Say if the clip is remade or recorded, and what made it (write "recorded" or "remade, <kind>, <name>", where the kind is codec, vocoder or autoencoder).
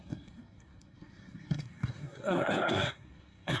remade, codec, SNAC